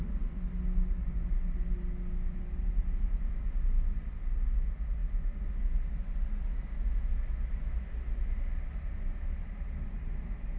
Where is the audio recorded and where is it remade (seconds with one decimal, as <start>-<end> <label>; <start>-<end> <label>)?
0.0-10.6 recorded